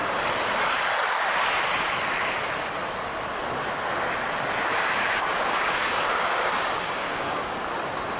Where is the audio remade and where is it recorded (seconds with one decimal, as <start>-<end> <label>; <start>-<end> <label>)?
0.0-4.8 recorded; 4.8-7.7 remade; 7.7-8.2 recorded